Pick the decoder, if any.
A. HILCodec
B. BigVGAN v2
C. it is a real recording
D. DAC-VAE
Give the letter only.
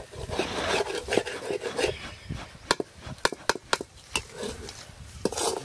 C